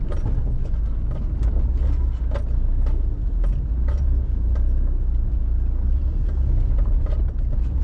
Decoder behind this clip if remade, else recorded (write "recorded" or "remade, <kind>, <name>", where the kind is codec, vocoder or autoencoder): recorded